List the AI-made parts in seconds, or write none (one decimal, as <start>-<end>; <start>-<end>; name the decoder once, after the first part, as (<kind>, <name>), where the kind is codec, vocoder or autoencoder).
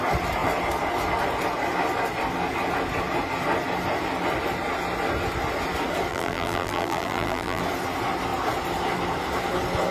6.1-7.6 (vocoder, BigVGAN v2)